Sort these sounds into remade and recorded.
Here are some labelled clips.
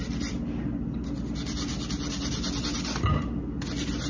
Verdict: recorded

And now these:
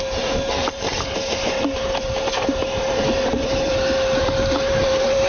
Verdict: remade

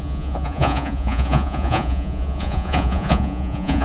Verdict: remade